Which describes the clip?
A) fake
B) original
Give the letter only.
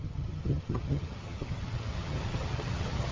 A